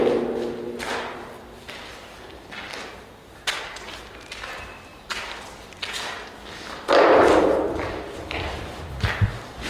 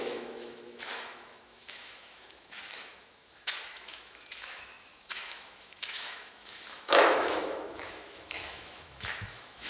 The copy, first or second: second